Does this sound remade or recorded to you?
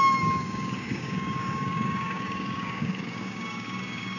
remade